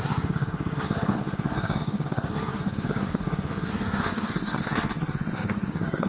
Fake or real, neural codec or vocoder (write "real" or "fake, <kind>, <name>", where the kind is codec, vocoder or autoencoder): fake, codec, SNAC